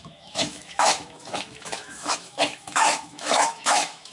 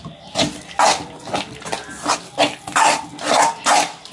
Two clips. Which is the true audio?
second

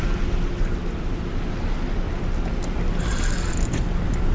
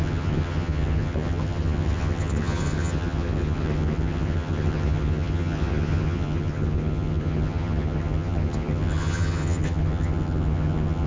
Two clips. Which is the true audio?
first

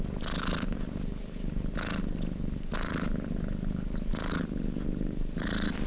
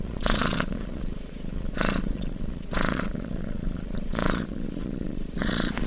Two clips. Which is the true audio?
first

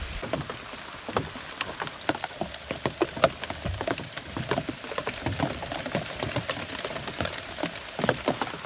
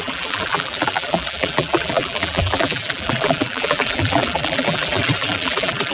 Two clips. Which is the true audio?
first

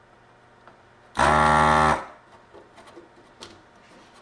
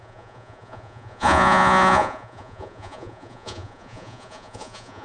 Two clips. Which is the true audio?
first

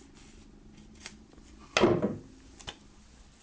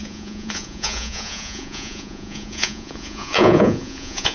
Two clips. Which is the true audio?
first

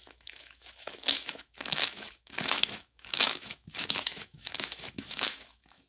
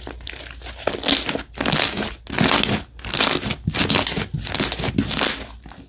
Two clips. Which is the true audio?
second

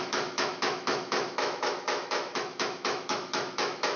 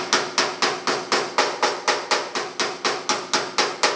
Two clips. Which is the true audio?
second